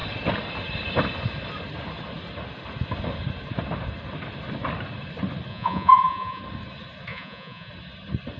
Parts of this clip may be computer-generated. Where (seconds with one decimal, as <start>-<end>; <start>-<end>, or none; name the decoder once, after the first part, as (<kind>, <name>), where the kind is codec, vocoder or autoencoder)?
5.5-6.4 (vocoder, Vocos); 7.1-7.7